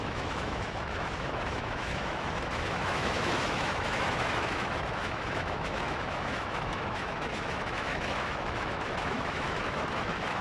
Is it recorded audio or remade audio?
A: remade